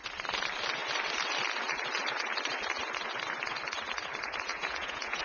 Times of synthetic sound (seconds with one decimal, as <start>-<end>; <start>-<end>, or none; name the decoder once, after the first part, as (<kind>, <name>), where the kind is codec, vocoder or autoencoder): 4.5-5.2 (vocoder, Vocos)